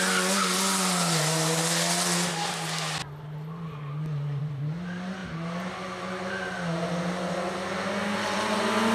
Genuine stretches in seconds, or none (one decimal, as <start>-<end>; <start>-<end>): 0.0-8.9